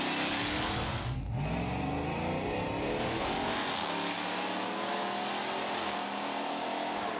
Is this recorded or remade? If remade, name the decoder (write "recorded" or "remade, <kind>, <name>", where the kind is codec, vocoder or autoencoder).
recorded